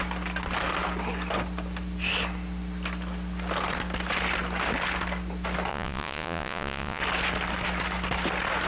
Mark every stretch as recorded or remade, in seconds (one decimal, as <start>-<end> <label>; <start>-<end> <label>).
0.0-5.7 recorded; 5.7-7.0 remade; 7.0-8.7 recorded